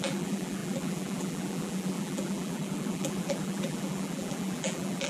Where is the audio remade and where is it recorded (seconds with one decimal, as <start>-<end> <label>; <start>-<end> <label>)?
0.0-5.1 remade